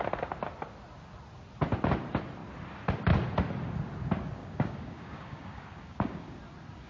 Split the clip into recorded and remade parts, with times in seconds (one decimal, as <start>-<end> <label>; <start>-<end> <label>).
0.0-4.4 recorded; 4.4-6.4 remade; 6.4-6.9 recorded